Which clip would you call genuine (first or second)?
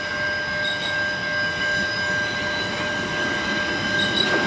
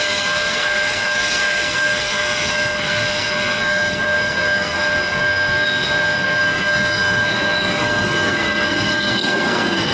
first